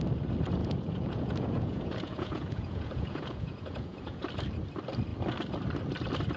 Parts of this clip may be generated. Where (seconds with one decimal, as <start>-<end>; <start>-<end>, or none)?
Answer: 0.6-4.2

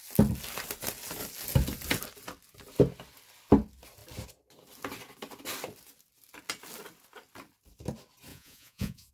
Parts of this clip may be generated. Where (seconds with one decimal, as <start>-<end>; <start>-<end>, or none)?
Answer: 8.3-9.1

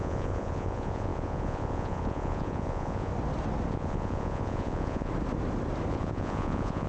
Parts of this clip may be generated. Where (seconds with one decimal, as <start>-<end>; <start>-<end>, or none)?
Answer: 0.0-3.1; 3.7-5.1; 5.9-6.9

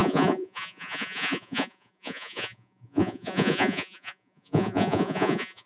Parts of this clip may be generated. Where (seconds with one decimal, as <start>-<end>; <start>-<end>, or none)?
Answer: 0.0-5.7

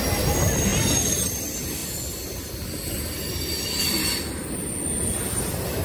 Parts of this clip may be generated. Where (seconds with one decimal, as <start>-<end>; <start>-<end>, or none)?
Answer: none

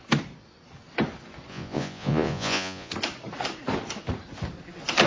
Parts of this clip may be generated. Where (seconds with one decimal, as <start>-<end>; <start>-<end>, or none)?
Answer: 1.5-2.9

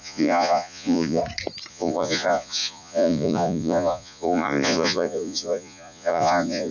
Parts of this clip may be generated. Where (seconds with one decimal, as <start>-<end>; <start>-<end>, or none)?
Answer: 0.0-1.2; 1.7-6.7

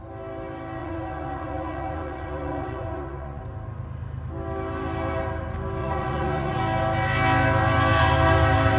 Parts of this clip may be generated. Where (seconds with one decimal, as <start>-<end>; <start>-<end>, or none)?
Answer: 0.8-3.4; 5.8-6.6